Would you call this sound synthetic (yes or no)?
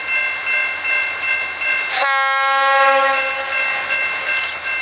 no